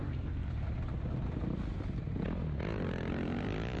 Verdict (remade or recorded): recorded